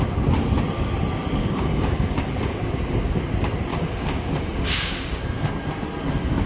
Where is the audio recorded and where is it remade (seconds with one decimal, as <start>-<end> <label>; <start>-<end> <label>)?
0.0-1.4 recorded; 1.4-3.2 remade; 3.2-3.7 recorded; 3.7-5.5 remade; 5.5-6.5 recorded